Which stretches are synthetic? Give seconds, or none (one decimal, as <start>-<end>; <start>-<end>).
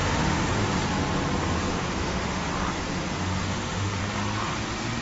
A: 0.0-0.5; 1.7-2.5; 3.4-4.0